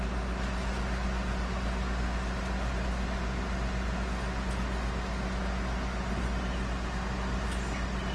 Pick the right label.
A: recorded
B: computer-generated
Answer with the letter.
A